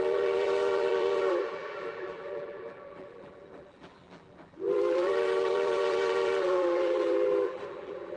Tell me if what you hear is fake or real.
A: fake